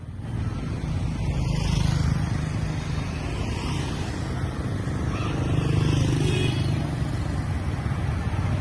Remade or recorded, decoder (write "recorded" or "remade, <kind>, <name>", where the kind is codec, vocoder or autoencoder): recorded